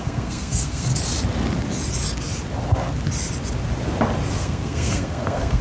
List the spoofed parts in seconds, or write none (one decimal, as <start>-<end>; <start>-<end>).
0.0-0.9; 4.3-5.6